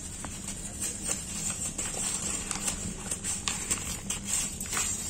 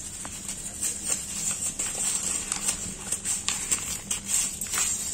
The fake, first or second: first